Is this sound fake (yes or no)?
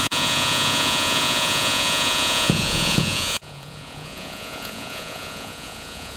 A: yes